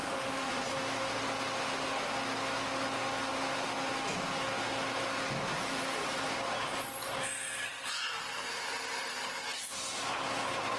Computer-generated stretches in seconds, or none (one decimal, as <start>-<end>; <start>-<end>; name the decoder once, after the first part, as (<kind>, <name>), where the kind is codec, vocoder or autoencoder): 0.0-0.5 (autoencoder, DAC-VAE)